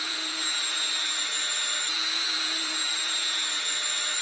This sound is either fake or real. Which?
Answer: fake